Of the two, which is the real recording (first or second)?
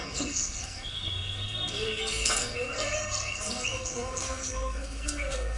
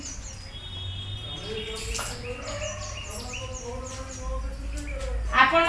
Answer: second